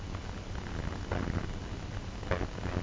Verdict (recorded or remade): recorded